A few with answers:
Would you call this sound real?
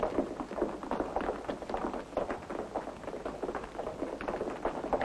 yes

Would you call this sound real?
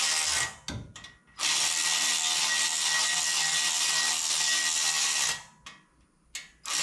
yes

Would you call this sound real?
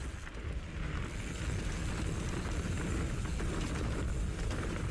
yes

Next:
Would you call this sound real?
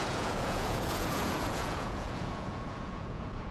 no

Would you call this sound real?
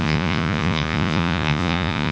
no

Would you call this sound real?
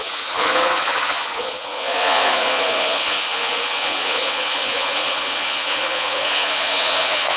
no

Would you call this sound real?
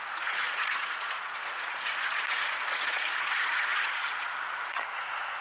no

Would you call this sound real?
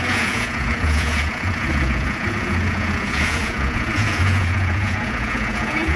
no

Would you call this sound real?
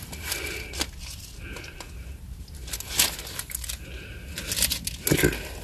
yes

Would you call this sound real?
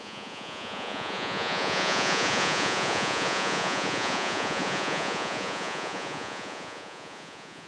no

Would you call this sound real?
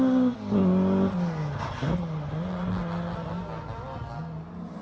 yes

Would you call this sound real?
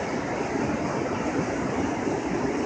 yes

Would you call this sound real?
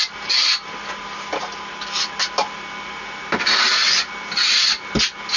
yes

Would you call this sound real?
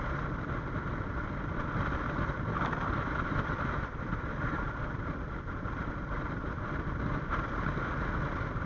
yes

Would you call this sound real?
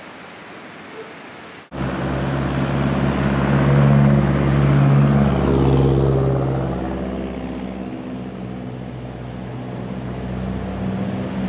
yes